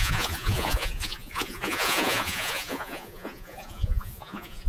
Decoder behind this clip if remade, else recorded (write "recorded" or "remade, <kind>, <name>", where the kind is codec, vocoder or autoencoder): remade, vocoder, Vocos